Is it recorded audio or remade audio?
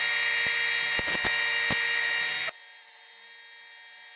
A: recorded